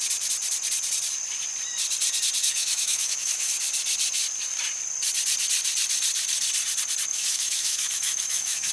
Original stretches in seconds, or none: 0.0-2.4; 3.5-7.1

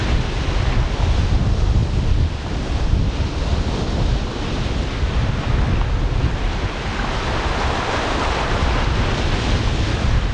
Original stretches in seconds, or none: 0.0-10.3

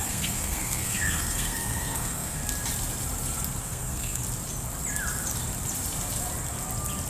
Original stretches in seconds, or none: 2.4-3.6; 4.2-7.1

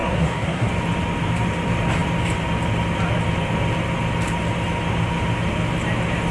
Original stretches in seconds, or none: 0.7-6.3